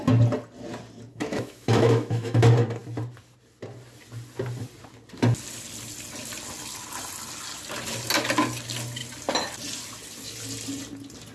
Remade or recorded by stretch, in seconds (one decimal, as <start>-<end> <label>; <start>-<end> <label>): 0.0-1.1 recorded; 1.1-2.4 remade; 2.4-11.3 recorded